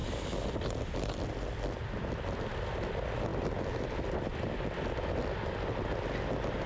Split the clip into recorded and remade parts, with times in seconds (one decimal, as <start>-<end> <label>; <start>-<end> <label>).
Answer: 0.0-6.7 recorded